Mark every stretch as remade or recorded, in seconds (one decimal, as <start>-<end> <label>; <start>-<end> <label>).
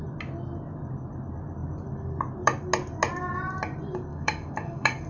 0.0-4.1 recorded; 4.1-5.1 remade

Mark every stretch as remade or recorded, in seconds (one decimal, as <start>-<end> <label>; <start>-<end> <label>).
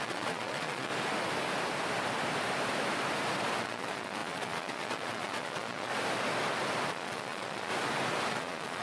0.0-0.9 remade; 0.9-3.6 recorded; 3.6-5.9 remade; 5.9-6.9 recorded; 6.9-7.7 remade; 7.7-8.3 recorded; 8.3-8.8 remade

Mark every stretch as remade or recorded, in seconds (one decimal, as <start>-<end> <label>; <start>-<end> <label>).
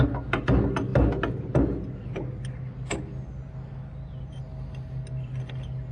0.0-5.9 recorded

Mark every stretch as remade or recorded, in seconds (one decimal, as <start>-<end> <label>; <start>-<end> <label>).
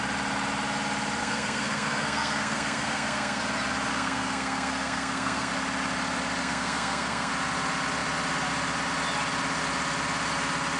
0.0-1.2 recorded; 1.2-3.4 remade; 3.4-3.9 recorded; 3.9-5.5 remade; 5.5-6.4 recorded; 6.4-7.3 remade; 7.3-10.8 recorded